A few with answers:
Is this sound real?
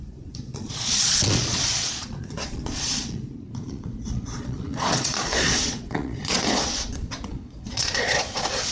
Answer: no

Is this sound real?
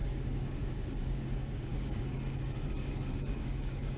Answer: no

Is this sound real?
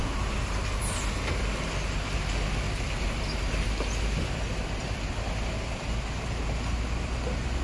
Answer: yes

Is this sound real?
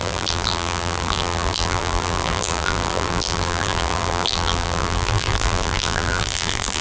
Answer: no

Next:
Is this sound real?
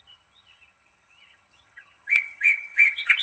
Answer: no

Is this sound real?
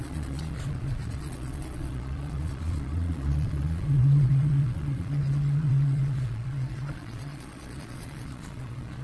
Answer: no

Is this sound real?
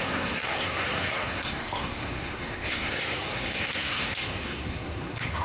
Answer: no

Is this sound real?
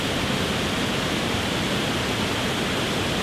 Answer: yes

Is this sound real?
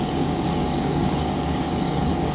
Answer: no